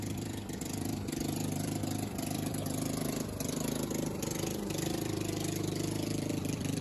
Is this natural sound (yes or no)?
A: no